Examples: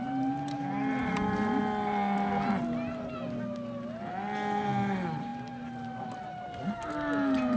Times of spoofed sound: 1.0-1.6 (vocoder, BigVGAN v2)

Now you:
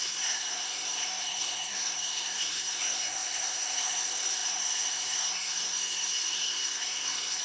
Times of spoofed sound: 0.0-7.4 (codec, SNAC)

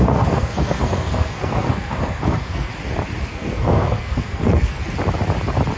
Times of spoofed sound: 0.0-2.7 (codec, SNAC); 3.2-4.8